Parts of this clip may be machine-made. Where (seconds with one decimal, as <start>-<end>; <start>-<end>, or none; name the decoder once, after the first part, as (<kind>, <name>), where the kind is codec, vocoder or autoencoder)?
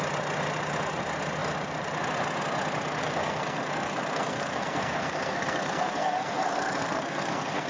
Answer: 3.0-7.7 (codec, SNAC)